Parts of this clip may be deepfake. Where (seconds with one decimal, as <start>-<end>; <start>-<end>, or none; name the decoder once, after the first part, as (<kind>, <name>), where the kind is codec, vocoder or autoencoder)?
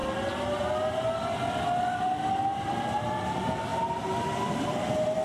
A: none